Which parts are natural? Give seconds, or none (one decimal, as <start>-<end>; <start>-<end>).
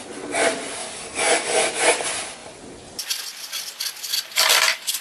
0.0-0.8; 1.6-5.0